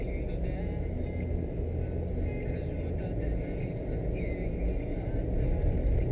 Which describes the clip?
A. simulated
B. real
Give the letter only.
B